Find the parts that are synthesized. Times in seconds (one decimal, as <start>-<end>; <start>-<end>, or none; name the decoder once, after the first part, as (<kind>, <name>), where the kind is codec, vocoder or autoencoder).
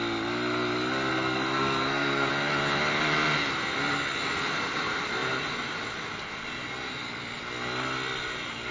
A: 1.1-2.3 (codec, SNAC)